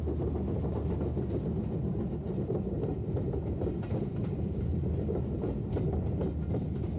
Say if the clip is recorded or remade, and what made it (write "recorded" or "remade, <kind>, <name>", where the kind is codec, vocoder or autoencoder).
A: recorded